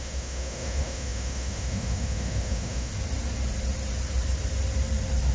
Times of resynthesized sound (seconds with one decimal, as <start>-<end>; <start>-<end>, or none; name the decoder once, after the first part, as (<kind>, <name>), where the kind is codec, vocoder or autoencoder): 0.0-2.9 (autoencoder, DAC-VAE)